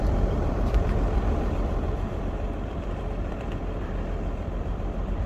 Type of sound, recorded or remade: remade